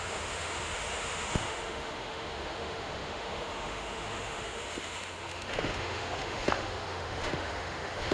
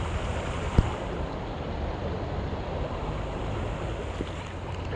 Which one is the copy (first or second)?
first